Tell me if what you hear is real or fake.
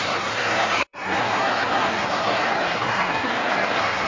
fake